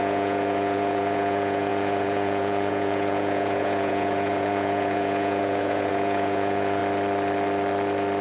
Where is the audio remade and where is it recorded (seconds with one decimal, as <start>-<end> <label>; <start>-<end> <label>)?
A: 0.0-6.8 remade; 6.8-8.2 recorded